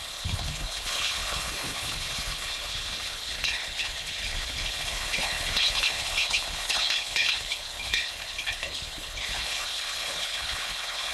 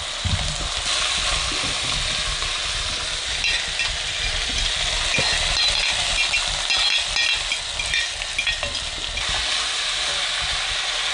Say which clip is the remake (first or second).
first